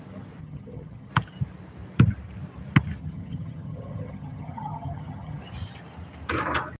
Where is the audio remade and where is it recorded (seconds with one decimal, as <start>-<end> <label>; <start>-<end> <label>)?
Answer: 0.0-0.4 recorded; 0.4-1.1 remade; 1.1-3.0 recorded; 3.0-5.4 remade; 5.4-6.8 recorded